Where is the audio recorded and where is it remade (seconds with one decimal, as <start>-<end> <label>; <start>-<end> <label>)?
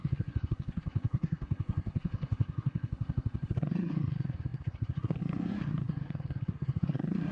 0.0-7.3 remade